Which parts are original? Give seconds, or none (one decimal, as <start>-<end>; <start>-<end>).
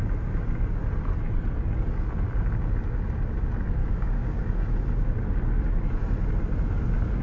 0.0-3.8; 4.4-7.2